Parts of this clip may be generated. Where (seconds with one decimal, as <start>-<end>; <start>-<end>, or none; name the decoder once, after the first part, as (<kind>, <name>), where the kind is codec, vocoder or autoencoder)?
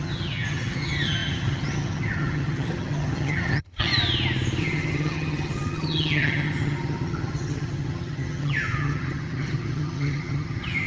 0.0-3.9 (vocoder, HiFi-GAN); 4.6-10.9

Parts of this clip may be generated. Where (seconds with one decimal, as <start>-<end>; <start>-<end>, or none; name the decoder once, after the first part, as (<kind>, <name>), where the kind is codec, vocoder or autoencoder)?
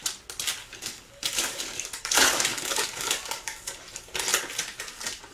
0.6-3.8 (codec, DAC)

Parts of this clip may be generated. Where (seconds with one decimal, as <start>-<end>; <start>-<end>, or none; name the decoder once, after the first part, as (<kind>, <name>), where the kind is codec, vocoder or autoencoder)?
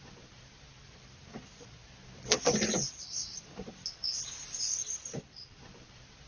4.1-6.3 (vocoder, BigVGAN v2)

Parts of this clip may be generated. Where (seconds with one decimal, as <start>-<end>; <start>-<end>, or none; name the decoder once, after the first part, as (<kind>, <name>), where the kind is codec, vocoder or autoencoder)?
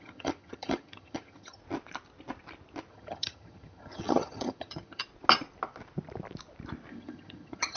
0.0-1.6 (vocoder, HiFi-GAN); 2.9-5.0; 6.9-7.8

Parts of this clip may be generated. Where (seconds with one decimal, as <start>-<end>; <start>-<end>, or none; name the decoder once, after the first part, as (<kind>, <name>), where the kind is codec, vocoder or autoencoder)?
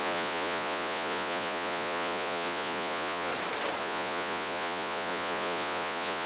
0.0-3.3 (vocoder, Vocos); 3.8-6.3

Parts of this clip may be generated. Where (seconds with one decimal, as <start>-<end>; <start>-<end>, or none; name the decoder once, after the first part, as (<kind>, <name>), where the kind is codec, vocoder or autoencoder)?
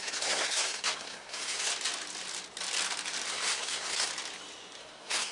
0.0-1.7 (codec, SNAC); 3.3-4.1; 4.8-5.3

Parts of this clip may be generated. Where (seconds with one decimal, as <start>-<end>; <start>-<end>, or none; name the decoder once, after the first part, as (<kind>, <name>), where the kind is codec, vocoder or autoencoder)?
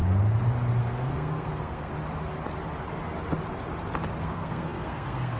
0.8-1.9 (codec, SNAC); 4.2-5.4